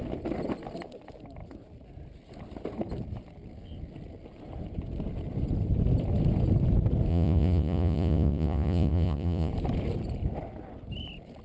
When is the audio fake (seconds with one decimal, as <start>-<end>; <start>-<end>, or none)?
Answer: 7.1-9.5